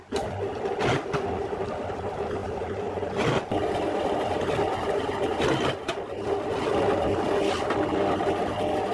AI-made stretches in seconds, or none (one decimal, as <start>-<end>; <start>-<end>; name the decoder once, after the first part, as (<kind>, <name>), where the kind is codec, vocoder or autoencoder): none